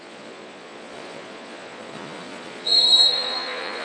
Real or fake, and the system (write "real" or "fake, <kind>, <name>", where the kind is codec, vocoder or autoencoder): fake, vocoder, Vocos